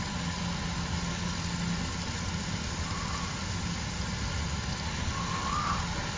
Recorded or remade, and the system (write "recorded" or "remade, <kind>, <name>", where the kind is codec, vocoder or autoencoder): recorded